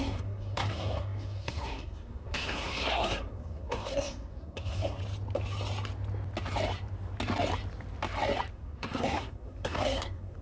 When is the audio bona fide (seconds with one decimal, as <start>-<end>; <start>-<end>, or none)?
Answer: 5.0-8.5

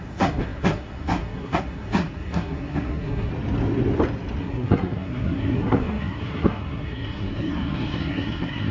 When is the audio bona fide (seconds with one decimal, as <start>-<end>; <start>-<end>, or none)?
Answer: 3.3-4.4